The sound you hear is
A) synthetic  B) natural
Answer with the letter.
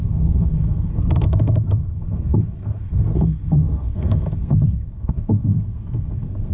A